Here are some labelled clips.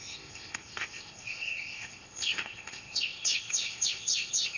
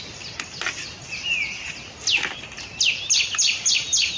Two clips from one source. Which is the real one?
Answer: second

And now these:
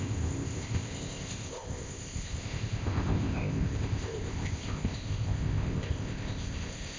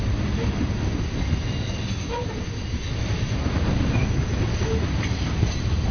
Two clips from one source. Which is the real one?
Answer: second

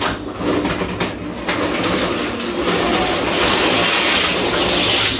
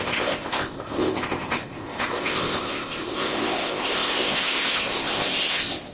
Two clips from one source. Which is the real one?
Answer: first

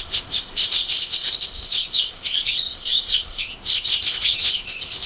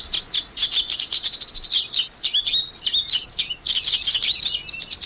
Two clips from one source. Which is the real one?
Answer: second